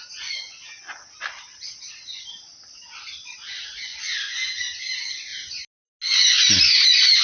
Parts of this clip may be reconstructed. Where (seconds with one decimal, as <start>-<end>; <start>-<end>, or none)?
none